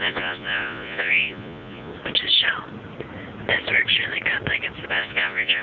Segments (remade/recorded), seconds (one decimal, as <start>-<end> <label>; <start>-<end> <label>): 0.0-1.9 remade; 1.9-4.9 recorded; 4.9-5.6 remade